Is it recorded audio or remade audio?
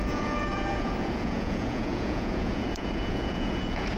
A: remade